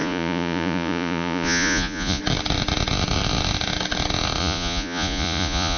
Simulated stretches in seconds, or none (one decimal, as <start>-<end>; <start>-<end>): 0.0-2.2; 4.4-5.8